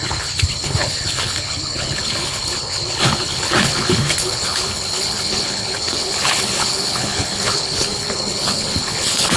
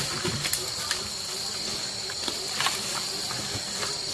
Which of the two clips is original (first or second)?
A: second